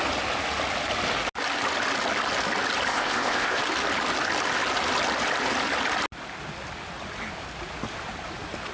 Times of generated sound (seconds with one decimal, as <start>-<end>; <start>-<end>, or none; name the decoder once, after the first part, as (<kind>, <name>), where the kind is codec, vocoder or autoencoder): 2.9-3.6 (codec, ZipCodec)